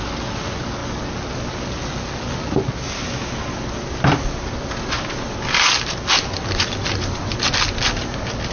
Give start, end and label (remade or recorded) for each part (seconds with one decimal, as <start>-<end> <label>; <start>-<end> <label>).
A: 0.0-8.5 recorded